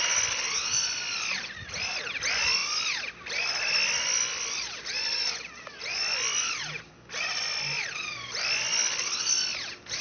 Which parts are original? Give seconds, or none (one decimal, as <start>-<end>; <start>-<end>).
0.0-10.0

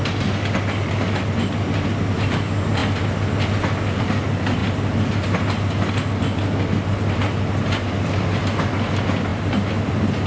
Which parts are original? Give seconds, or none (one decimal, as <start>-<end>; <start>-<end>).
0.0-10.3

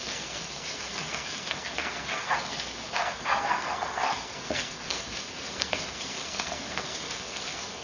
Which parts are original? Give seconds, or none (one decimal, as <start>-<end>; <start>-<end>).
none

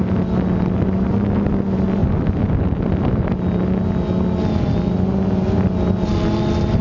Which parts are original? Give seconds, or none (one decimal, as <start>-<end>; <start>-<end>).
0.0-6.8

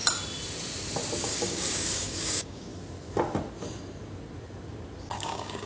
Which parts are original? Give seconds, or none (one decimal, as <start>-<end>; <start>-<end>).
0.0-1.2; 2.7-5.0

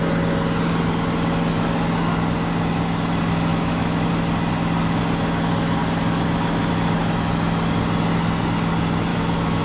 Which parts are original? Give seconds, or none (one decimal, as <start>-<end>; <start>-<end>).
0.0-3.5; 4.1-9.1